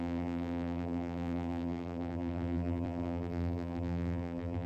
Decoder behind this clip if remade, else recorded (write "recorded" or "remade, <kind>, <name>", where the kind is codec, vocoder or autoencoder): remade, vocoder, BigVGAN v2